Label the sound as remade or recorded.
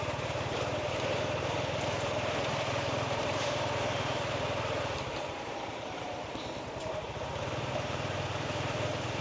remade